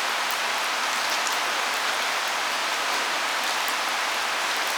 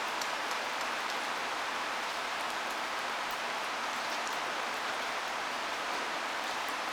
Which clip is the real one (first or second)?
first